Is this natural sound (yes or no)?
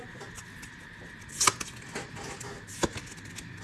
yes